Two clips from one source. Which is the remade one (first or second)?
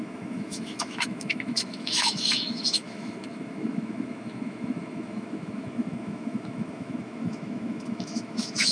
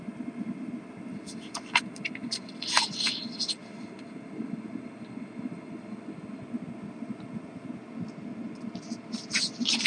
first